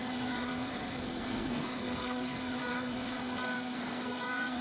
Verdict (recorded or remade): remade